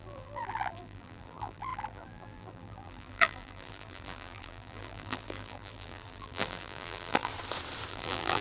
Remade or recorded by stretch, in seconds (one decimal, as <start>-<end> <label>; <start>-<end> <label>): 0.0-7.3 remade; 7.3-7.9 recorded; 7.9-8.4 remade